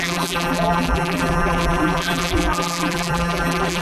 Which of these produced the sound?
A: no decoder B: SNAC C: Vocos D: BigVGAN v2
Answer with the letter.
D